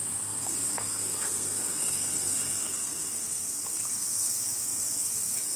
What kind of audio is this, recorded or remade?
remade